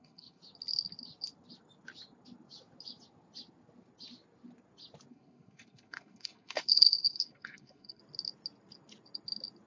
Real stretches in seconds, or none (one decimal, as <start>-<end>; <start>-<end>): 0.4-5.1; 8.0-9.7